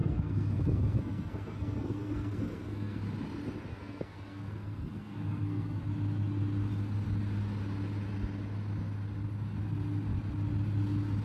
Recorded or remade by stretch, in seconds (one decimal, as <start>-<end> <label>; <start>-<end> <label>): 0.0-3.0 remade; 3.0-3.7 recorded; 3.7-5.8 remade; 5.8-11.2 recorded